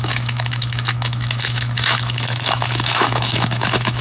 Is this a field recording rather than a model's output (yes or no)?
no